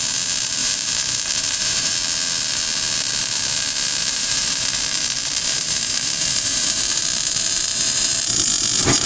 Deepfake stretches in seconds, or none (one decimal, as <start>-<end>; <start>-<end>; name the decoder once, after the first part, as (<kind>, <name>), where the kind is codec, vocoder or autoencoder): 0.6-1.9 (vocoder, BigVGAN v2); 4.0-8.1